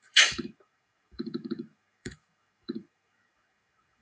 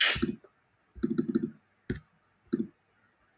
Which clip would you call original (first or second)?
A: second